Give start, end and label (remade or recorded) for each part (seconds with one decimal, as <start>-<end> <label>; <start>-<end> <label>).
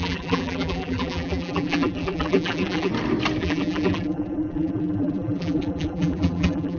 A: 0.0-2.9 remade; 2.9-3.4 recorded; 3.4-6.8 remade